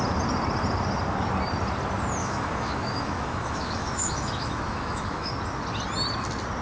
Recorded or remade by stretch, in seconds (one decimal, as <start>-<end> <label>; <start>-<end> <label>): 0.0-2.2 recorded; 2.2-5.3 remade; 5.3-6.6 recorded